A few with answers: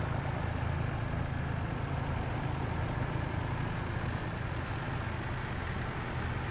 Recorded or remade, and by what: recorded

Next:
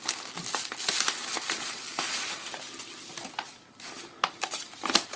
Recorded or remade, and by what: recorded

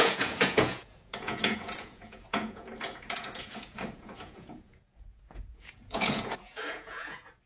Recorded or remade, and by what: remade, vocoder, Vocos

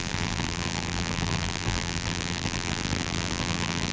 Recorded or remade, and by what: remade, vocoder, BigVGAN v2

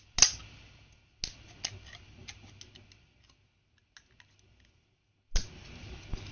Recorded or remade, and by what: recorded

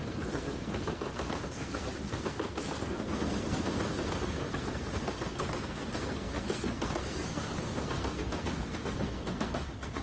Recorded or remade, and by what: remade, codec, SNAC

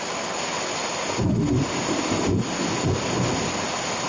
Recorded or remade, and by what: recorded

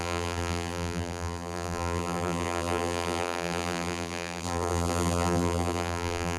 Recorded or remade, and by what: remade, vocoder, BigVGAN v2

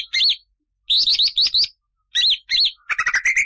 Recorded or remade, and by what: recorded